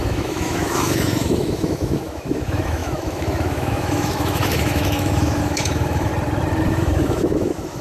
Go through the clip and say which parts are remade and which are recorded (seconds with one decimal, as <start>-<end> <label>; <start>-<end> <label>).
0.0-6.1 remade; 6.1-6.7 recorded; 6.7-7.8 remade